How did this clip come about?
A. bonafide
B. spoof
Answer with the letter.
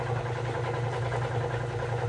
A